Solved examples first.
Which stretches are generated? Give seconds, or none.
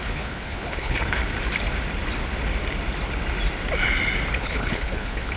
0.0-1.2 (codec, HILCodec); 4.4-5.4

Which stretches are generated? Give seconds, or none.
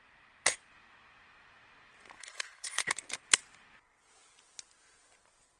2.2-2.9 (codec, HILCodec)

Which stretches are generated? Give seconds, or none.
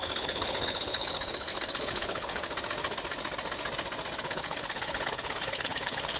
0.0-2.4 (codec, HILCodec); 4.2-6.2